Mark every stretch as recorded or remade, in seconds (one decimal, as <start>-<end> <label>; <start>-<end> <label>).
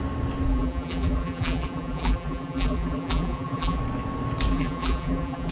0.0-0.5 recorded; 0.5-3.8 remade; 3.8-4.5 recorded; 4.5-5.5 remade